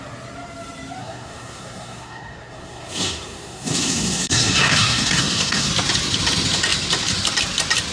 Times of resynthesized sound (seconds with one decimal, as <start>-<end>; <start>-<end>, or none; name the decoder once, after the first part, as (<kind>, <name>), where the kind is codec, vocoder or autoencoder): 1.0-5.7 (codec, SNAC)